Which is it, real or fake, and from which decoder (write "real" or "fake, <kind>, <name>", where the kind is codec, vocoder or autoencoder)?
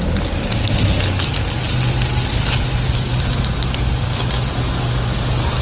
real